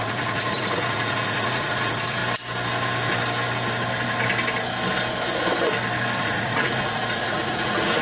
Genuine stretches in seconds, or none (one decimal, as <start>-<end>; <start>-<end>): 2.2-6.2